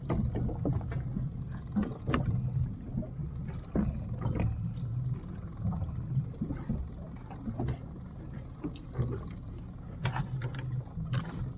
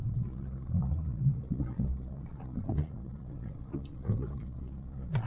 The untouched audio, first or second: first